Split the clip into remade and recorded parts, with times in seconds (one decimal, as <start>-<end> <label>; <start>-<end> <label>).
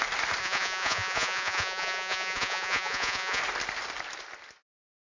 0.0-0.4 recorded; 0.4-3.4 remade; 3.4-5.0 recorded